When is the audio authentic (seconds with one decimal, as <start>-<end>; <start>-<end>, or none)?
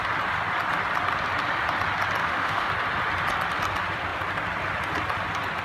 0.0-2.2; 2.7-5.6